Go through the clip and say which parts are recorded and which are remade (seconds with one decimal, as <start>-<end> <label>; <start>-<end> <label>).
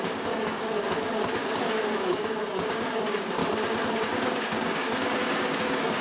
0.0-3.4 remade; 3.4-3.9 recorded; 3.9-6.0 remade